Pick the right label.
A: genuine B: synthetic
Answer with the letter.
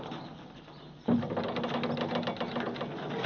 A